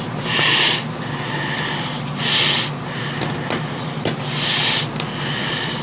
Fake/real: real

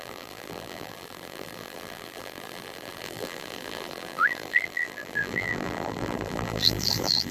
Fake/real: fake